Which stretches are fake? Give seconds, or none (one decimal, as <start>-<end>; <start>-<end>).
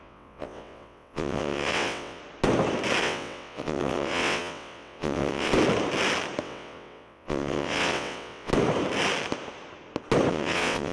0.0-2.2; 3.0-5.5; 6.4-8.5; 10.3-10.9